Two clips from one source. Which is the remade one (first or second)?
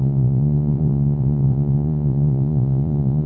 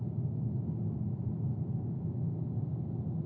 first